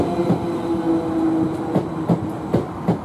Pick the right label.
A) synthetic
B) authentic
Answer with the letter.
B